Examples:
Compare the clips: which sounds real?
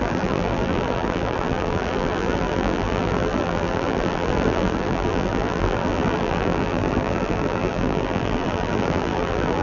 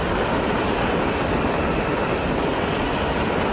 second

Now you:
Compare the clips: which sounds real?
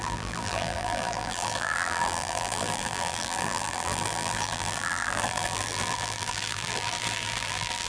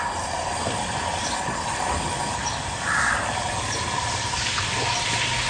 second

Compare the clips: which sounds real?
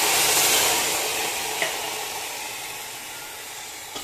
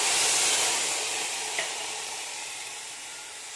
first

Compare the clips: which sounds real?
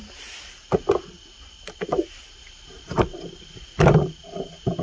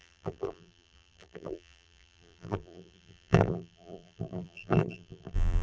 first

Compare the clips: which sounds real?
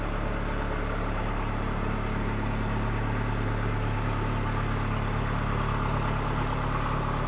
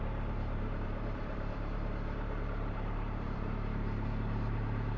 first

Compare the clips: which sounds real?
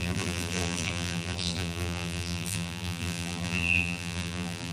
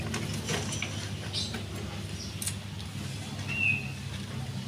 second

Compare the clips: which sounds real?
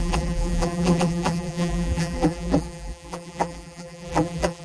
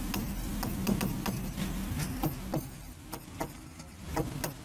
second